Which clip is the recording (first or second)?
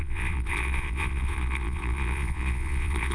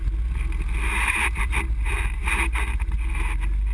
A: second